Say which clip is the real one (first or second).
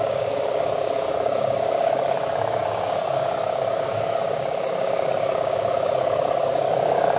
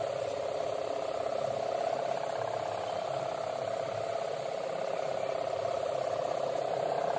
second